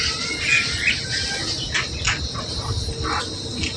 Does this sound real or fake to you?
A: real